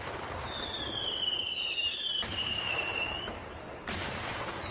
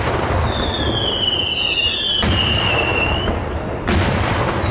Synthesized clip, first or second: first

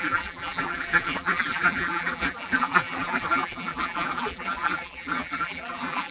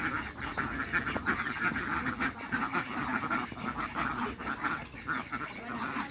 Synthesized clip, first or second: first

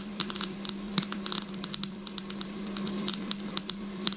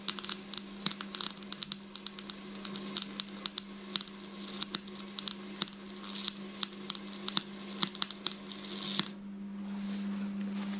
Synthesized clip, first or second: first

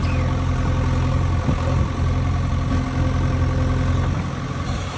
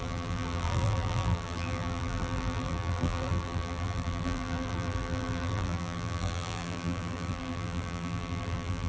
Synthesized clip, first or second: second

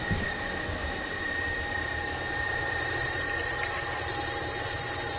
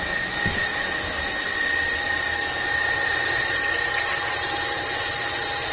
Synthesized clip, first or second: first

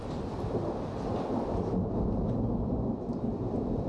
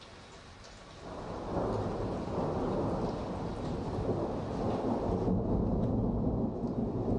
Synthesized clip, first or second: first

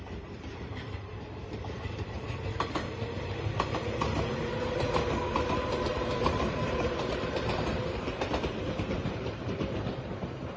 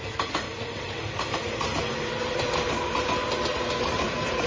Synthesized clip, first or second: first